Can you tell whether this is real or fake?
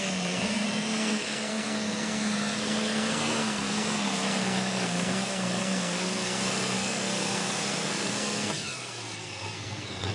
fake